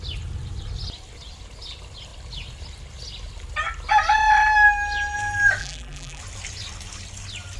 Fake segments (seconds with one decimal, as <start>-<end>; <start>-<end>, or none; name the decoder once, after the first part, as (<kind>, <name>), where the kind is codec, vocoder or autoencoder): 5.6-6.2 (vocoder, BigVGAN v2)